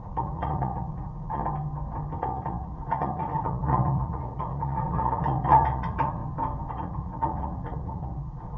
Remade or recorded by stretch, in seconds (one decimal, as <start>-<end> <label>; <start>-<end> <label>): 0.0-1.4 remade; 1.4-2.2 recorded; 2.2-6.2 remade; 6.2-6.7 recorded; 6.7-8.6 remade